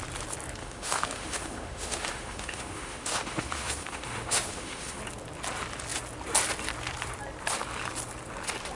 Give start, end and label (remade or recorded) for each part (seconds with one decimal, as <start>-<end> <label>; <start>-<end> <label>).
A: 0.0-0.6 recorded; 0.6-5.0 remade; 5.0-8.7 recorded